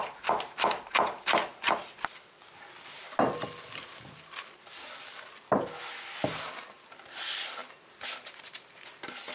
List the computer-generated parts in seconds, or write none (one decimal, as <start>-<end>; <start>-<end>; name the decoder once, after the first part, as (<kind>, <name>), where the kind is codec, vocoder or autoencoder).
7.6-8.4 (vocoder, BigVGAN v2)